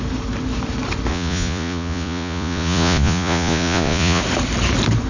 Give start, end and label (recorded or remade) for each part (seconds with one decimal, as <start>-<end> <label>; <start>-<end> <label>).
0.0-1.1 recorded; 1.1-4.2 remade; 4.2-5.1 recorded

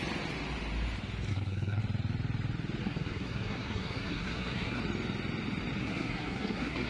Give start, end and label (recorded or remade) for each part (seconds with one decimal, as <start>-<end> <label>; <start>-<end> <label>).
0.0-1.3 recorded; 1.3-1.8 remade; 1.8-2.8 recorded; 2.8-4.8 remade; 4.8-5.8 recorded; 5.8-6.9 remade

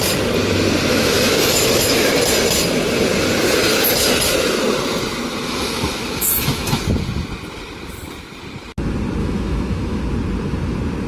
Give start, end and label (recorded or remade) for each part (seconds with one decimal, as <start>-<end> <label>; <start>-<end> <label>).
0.0-0.9 recorded; 0.9-2.1 remade; 2.1-5.3 recorded; 5.3-6.8 remade; 6.8-9.2 recorded; 9.2-10.0 remade; 10.0-11.1 recorded

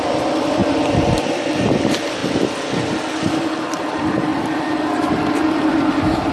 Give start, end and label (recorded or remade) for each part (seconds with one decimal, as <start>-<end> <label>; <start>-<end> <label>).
0.0-0.6 remade; 0.6-1.1 recorded; 1.1-4.3 remade; 4.3-5.1 recorded; 5.1-6.3 remade